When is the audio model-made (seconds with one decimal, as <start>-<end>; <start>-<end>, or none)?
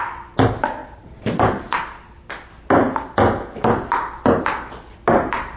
0.8-1.8